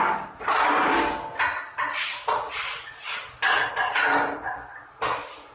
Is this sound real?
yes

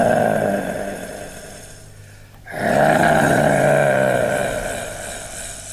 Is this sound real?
yes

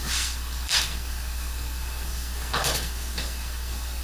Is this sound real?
no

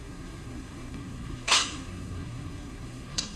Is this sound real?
no